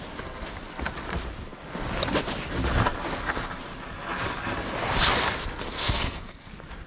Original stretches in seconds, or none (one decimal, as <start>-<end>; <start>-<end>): 0.0-5.7; 6.5-6.9